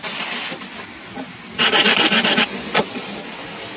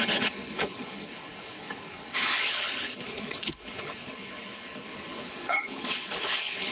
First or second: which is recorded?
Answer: first